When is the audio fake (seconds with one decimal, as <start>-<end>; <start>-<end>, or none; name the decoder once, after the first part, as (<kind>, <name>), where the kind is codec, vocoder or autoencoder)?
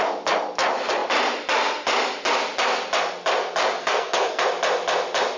3.8-4.4 (codec, SNAC)